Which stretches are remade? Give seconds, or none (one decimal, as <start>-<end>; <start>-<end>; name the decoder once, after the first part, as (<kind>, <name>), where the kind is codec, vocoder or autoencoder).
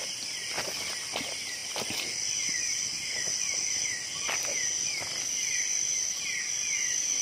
none